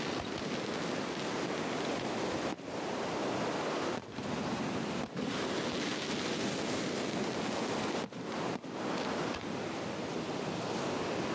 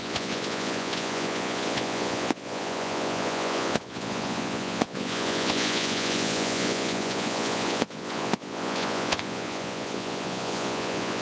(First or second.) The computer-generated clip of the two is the second